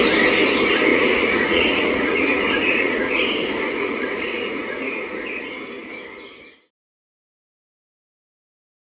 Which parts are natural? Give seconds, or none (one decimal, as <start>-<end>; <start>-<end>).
0.0-0.9; 5.2-9.0